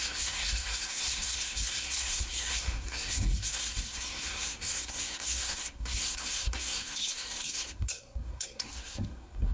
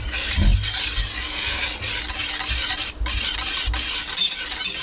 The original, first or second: second